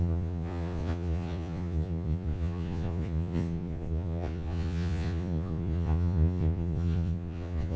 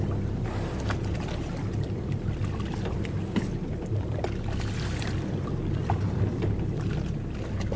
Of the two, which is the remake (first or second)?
first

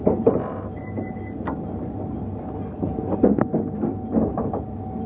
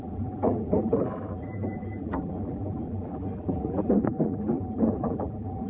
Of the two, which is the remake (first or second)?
second